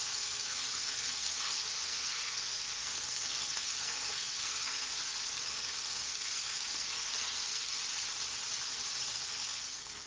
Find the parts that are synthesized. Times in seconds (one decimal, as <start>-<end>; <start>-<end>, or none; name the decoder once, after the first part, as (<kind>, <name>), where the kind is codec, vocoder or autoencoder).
0.0-7.8 (codec, SNAC); 9.1-10.1